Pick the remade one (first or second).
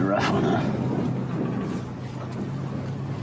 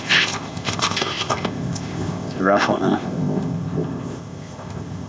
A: second